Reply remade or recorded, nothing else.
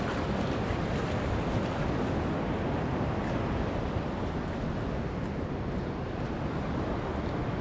recorded